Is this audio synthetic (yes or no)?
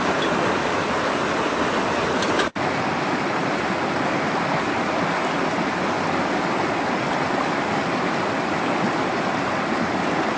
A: no